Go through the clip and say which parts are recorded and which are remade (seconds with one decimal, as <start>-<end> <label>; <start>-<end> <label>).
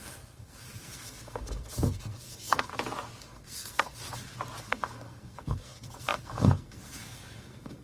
0.0-2.7 remade; 2.7-3.2 recorded; 3.2-4.0 remade; 4.0-4.6 recorded; 4.6-7.8 remade